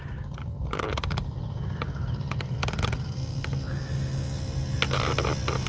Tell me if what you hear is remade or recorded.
recorded